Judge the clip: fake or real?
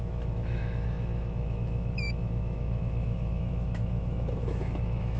fake